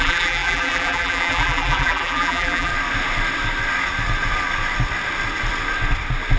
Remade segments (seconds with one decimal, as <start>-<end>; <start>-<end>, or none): 0.0-2.7